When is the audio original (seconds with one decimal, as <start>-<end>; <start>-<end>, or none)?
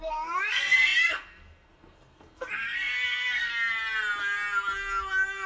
3.5-5.5